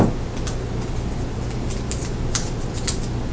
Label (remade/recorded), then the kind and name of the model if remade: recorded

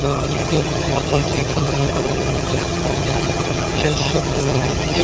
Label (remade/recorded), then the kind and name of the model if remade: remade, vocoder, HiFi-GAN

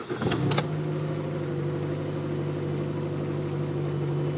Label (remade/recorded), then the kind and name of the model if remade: recorded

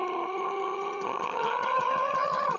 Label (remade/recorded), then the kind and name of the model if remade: remade, vocoder, HiFi-GAN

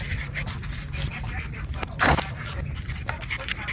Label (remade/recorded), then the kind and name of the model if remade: recorded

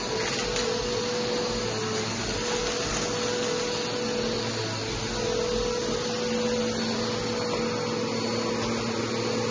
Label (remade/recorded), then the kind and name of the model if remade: recorded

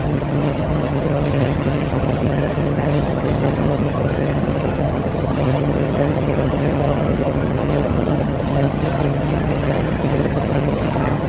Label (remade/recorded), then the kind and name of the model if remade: remade, vocoder, HiFi-GAN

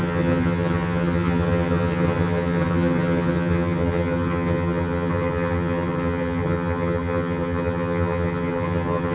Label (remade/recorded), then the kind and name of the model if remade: remade, vocoder, HiFi-GAN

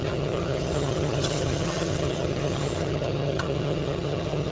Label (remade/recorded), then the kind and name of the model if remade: remade, vocoder, HiFi-GAN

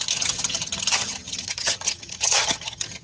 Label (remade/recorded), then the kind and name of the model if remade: remade, vocoder, HiFi-GAN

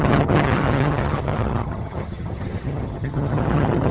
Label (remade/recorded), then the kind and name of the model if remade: remade, vocoder, HiFi-GAN